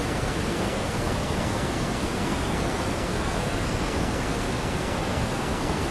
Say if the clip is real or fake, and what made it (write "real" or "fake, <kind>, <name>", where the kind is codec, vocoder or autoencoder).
fake, codec, SNAC